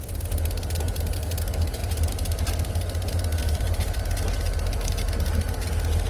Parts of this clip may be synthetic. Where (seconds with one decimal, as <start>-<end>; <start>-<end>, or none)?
1.8-2.7; 3.4-4.0